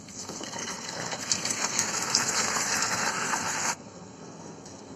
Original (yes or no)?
no